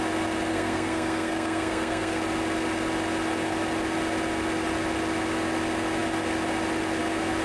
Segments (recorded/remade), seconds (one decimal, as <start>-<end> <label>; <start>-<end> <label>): 0.0-0.5 recorded; 0.5-2.2 remade; 2.2-7.4 recorded